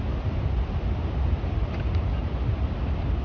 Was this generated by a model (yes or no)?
no